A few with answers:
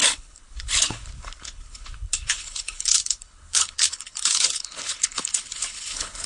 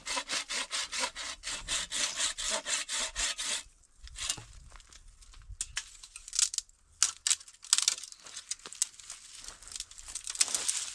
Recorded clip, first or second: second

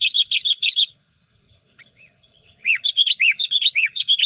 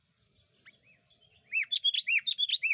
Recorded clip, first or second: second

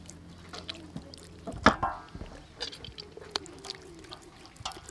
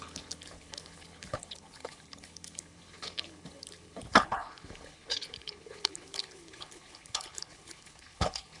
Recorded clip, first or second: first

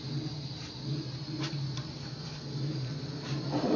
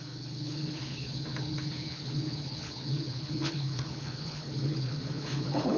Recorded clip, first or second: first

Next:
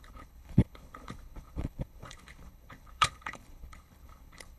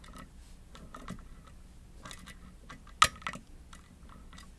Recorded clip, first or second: second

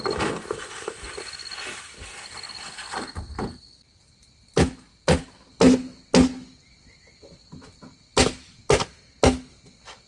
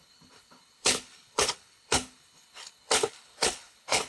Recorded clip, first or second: first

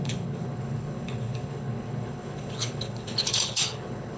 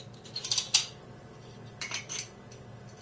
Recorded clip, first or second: second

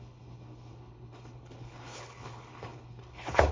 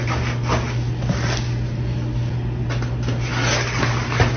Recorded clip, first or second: second